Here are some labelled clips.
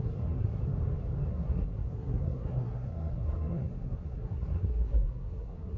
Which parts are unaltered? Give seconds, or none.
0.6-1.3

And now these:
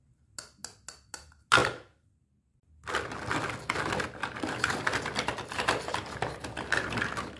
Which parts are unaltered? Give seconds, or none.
0.0-7.4

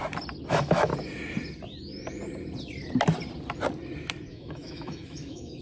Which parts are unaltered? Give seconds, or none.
0.0-0.5; 0.9-4.3